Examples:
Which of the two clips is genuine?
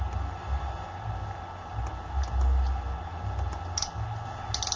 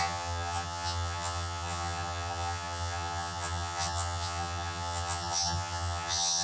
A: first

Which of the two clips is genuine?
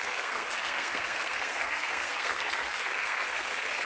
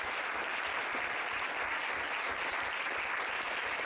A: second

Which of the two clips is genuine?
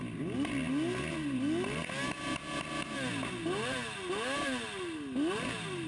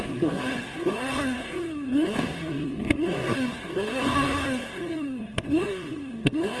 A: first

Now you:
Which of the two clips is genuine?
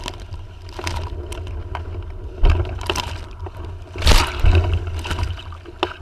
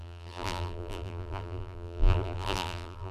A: first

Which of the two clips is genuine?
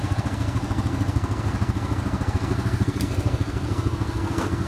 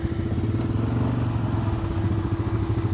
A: second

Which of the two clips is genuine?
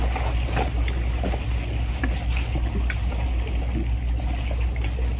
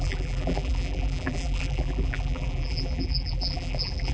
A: first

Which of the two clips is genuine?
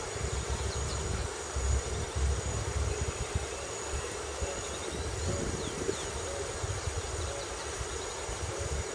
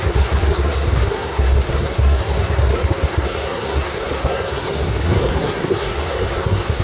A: first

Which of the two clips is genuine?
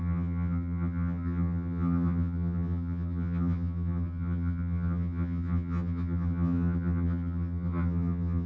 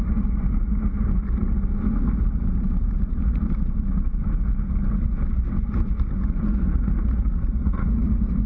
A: second